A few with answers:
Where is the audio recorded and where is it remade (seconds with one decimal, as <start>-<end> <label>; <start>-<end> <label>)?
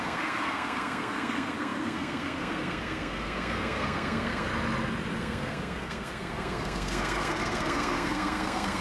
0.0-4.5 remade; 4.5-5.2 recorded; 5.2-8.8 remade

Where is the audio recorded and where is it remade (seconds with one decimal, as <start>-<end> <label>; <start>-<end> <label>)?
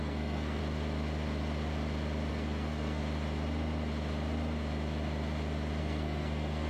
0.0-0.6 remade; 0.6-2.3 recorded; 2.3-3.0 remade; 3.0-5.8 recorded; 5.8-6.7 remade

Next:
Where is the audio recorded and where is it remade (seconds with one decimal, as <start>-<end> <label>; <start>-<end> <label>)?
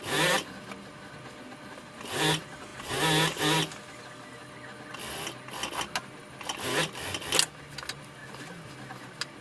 0.0-9.4 recorded